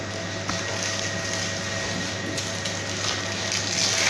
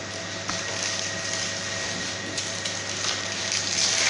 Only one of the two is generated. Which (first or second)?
second